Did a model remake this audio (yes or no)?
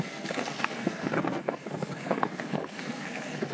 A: yes